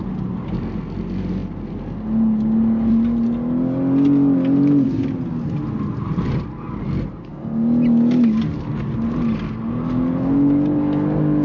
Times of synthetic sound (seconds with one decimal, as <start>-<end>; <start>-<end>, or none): none